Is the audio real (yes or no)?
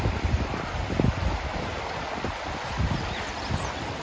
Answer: yes